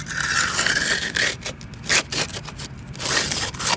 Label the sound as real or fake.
real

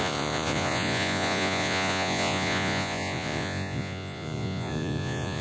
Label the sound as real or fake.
fake